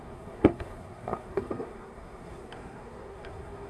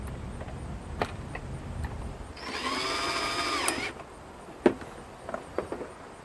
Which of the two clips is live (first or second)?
second